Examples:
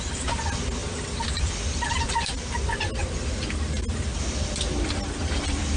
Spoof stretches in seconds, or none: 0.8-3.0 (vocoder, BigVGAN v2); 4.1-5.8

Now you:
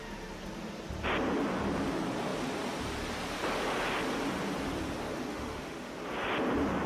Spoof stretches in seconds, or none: 5.3-5.9 (autoencoder, DAC-VAE)

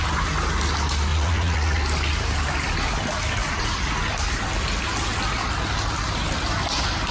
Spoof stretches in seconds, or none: 1.1-1.8 (vocoder, Vocos); 3.4-3.9

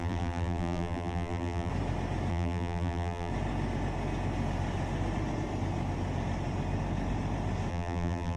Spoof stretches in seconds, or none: 0.0-1.7 (vocoder, BigVGAN v2); 2.3-3.3; 7.7-8.4

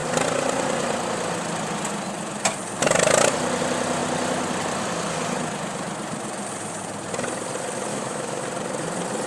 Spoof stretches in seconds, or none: 7.9-8.4 (autoencoder, DAC-VAE)

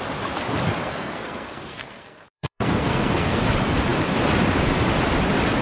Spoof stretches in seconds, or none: 0.8-3.4 (codec, SNAC)

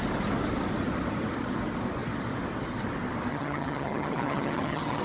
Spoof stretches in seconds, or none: 3.3-5.0 (vocoder, HiFi-GAN)